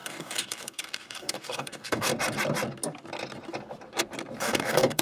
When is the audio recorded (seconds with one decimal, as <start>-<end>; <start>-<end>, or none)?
2.1-4.4